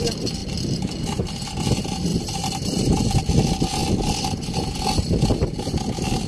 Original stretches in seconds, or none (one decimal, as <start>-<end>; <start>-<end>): 0.0-2.1; 3.2-6.3